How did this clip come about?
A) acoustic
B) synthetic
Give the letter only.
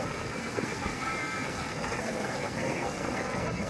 B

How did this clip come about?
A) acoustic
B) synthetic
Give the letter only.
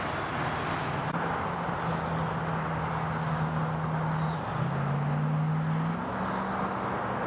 A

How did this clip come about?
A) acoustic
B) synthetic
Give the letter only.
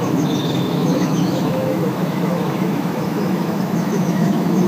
B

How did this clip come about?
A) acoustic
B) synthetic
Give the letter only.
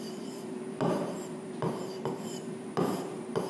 B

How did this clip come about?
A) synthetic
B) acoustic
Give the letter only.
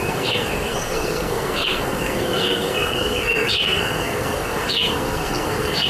A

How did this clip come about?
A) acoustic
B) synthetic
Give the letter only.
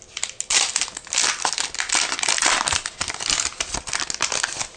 A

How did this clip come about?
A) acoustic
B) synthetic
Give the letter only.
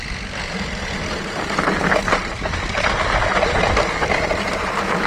A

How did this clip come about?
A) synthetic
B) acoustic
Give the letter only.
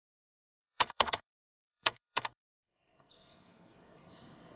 A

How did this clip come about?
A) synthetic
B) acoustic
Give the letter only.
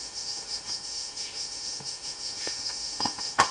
A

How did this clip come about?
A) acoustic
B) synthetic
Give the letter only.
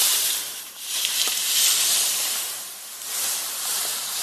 B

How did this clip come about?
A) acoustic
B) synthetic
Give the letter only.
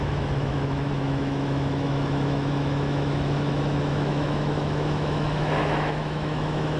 B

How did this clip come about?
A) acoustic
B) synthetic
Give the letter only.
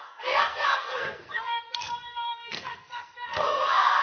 B